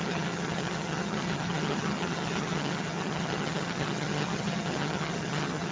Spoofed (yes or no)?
yes